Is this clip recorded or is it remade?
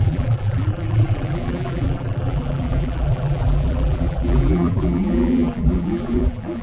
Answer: remade